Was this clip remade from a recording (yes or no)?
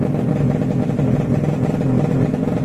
no